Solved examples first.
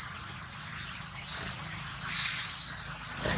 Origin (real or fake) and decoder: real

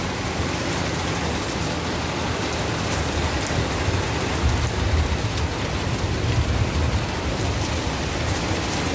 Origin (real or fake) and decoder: real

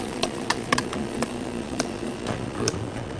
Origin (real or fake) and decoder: fake, vocoder, Vocos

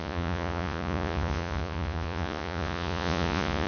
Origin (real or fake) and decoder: fake, vocoder, Vocos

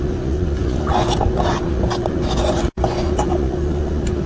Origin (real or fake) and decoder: fake, vocoder, Vocos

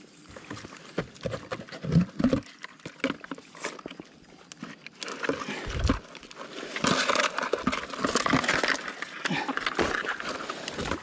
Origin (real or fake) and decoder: real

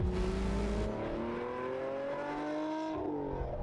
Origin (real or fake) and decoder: real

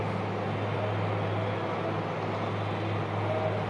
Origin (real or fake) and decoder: real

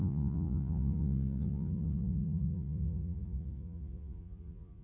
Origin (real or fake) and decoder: fake, vocoder, Vocos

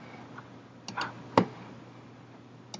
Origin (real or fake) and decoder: real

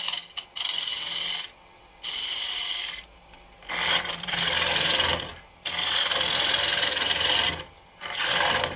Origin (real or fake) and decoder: real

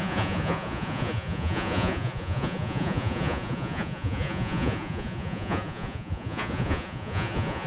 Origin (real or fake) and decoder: fake, vocoder, Vocos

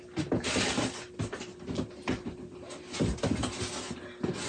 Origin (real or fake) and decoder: real